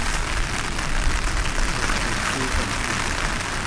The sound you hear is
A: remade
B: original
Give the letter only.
B